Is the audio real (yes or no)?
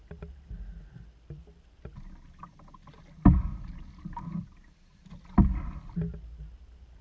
yes